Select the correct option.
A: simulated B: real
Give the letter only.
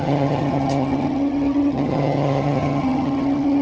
A